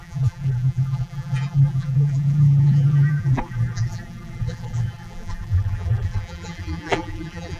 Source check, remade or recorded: remade